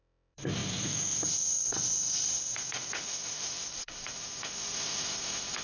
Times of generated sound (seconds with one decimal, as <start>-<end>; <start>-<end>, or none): 0.0-0.6; 1.6-5.6

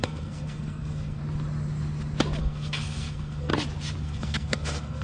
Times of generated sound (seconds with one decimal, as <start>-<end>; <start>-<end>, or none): 0.0-1.2; 2.4-3.5; 4.0-5.0

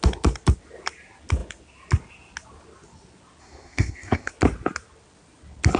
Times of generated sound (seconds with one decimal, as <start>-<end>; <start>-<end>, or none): 3.4-4.3